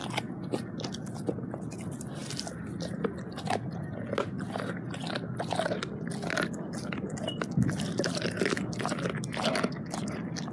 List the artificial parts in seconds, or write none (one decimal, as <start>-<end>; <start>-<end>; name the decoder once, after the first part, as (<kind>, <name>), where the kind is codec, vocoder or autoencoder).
none